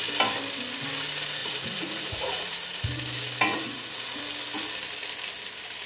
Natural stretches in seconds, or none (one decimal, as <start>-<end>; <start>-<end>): 0.0-1.4; 2.8-3.5; 4.2-5.9